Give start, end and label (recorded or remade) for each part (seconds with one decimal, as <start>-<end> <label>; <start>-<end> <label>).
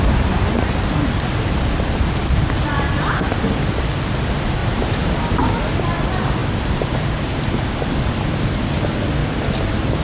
0.0-4.6 recorded; 4.6-5.5 remade; 5.5-6.4 recorded; 6.4-7.6 remade; 7.6-9.2 recorded; 9.2-10.0 remade